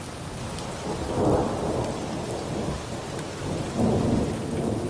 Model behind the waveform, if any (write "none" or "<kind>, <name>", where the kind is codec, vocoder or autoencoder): none